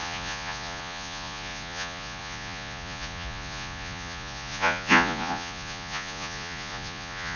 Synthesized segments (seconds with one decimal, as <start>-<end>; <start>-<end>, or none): 0.0-7.4